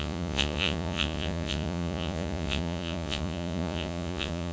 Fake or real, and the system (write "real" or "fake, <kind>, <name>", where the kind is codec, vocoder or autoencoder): fake, vocoder, Vocos